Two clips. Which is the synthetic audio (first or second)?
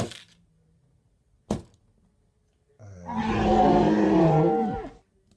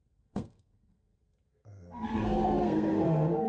second